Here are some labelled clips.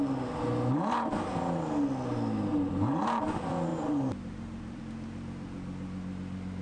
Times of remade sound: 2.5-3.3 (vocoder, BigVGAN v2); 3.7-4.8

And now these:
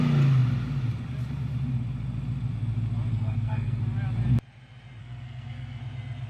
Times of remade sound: 3.1-3.8 (codec, SNAC); 5.0-5.8

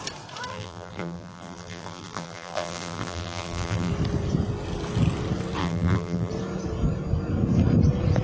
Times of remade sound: 0.5-3.9 (vocoder, BigVGAN v2); 5.6-6.3

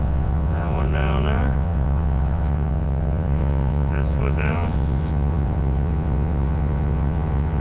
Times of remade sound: 0.0-7.6 (vocoder, WaveNeXt)

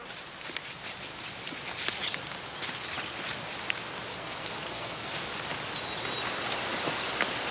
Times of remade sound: 4.1-5.2 (codec, SNAC)